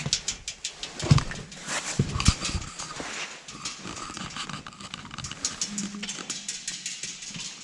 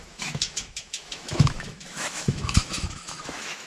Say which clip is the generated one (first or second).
second